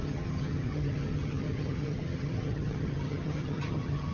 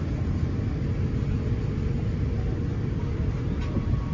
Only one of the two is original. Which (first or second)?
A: second